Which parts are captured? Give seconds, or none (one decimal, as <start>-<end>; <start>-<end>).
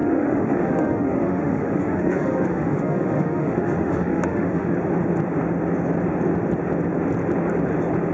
4.7-8.1